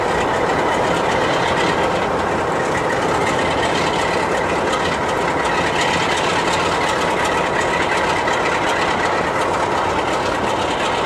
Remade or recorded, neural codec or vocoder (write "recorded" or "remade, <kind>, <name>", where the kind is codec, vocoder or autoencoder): recorded